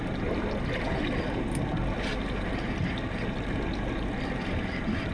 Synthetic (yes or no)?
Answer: no